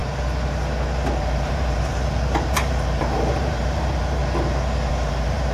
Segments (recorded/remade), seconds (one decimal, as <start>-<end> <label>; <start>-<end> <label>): 0.0-1.2 recorded; 1.2-4.2 remade; 4.2-4.9 recorded; 4.9-5.5 remade